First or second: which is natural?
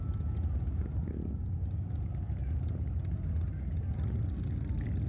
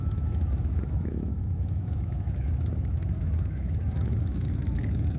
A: first